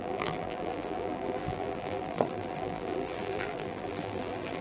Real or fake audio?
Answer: fake